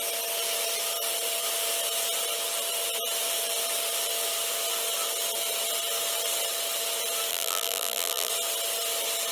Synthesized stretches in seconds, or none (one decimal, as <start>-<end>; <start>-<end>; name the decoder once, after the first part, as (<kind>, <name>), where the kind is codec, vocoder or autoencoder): 7.3-8.3 (vocoder, BigVGAN v2)